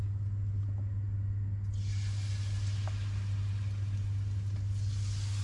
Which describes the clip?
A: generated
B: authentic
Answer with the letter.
B